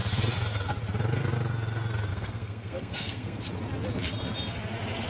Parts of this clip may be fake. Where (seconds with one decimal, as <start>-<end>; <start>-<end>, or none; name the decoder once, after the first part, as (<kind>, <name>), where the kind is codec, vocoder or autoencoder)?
2.1-3.4 (codec, SNAC)